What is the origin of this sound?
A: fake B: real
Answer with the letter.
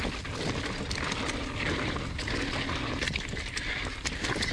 B